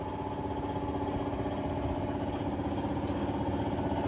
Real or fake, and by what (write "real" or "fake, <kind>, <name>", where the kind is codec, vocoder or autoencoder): real